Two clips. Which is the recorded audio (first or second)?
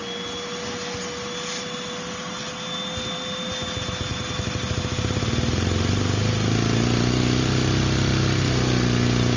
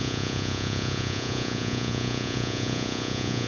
first